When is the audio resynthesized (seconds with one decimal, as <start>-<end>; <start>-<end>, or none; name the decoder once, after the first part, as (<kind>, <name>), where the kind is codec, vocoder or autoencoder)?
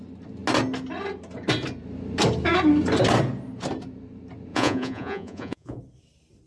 4.5-5.8 (vocoder, Vocos)